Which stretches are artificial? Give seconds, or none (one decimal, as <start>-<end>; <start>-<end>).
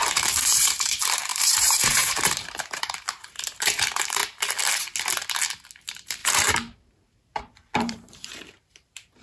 0.0-4.2; 5.8-9.2